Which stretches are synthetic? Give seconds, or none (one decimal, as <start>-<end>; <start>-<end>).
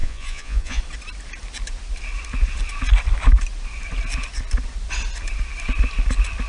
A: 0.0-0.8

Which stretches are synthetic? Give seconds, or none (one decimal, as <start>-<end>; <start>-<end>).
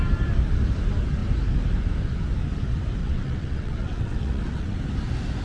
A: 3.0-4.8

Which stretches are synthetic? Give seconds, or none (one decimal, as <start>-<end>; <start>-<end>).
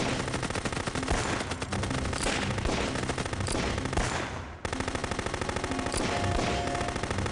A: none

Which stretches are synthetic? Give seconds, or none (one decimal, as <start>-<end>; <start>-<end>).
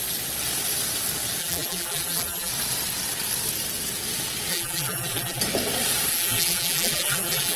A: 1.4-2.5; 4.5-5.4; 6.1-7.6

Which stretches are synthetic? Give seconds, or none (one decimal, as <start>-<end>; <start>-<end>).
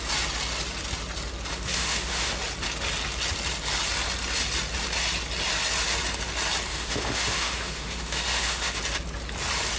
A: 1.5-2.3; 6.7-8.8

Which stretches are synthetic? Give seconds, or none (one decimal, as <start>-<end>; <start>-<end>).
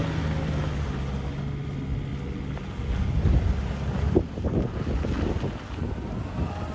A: none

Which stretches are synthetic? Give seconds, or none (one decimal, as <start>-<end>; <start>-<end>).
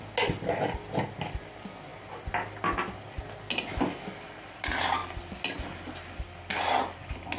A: none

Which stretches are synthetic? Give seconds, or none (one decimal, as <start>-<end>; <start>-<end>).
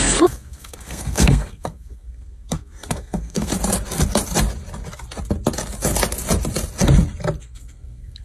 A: 0.0-3.5; 7.4-8.2